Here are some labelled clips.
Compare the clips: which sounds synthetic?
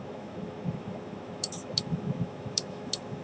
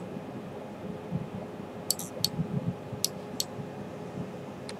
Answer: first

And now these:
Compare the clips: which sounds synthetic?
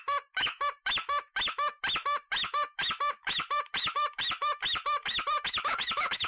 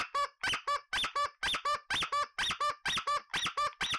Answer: first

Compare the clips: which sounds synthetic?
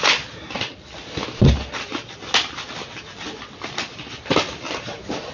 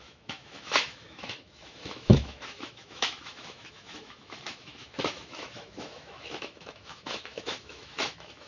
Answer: second